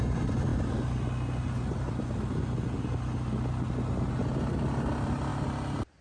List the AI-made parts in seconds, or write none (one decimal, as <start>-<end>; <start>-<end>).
none